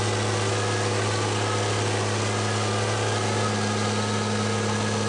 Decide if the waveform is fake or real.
real